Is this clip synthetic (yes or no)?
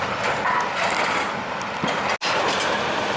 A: no